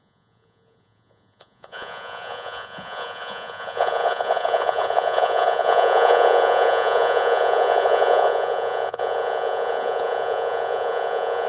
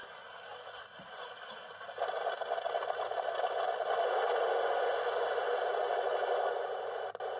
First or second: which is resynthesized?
first